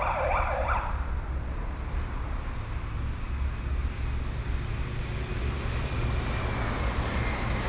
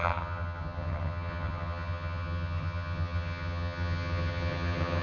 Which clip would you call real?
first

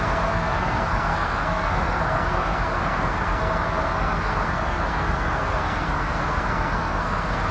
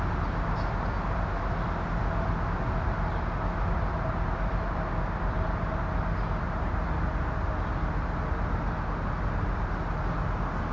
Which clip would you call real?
second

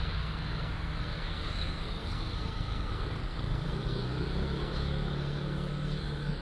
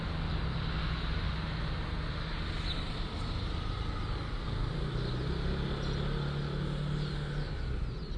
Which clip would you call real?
second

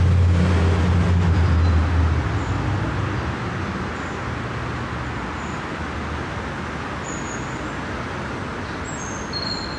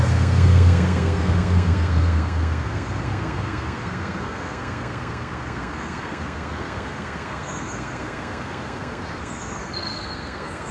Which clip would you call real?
first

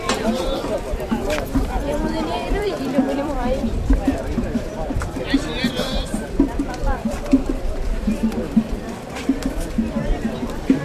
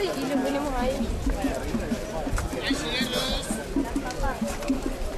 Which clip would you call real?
second